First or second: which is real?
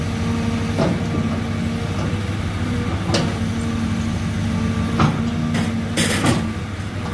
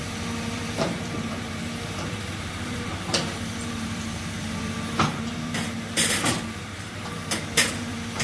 first